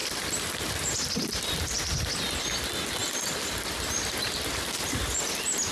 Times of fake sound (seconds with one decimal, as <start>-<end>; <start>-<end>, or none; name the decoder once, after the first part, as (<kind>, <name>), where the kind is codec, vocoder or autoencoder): 0.0-2.2 (vocoder, BigVGAN v2)